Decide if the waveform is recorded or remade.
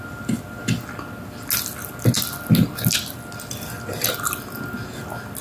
recorded